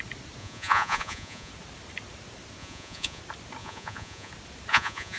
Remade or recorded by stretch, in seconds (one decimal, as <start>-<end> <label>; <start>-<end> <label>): 0.0-0.4 recorded; 0.4-1.5 remade; 1.5-2.6 recorded; 2.6-3.2 remade; 3.2-3.6 recorded; 3.6-4.3 remade; 4.3-4.7 recorded; 4.7-5.2 remade